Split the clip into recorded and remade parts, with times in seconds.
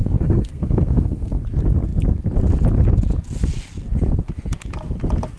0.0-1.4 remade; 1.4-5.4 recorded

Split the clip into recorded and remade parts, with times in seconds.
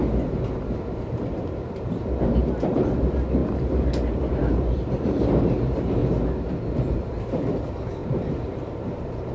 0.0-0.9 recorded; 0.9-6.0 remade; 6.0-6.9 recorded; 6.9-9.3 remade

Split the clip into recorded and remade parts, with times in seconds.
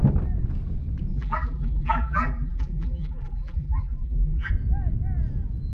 0.0-1.1 recorded; 1.1-4.5 remade; 4.5-5.7 recorded